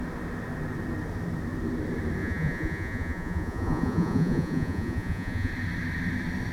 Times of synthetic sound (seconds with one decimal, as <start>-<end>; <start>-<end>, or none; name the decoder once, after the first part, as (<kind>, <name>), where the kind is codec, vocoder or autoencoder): 2.2-5.5 (vocoder, Vocos)